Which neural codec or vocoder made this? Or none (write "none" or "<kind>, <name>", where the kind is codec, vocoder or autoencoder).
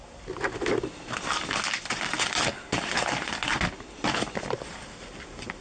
none